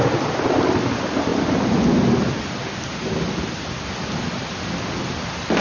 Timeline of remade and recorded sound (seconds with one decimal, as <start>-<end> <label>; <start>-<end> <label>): 0.0-5.6 recorded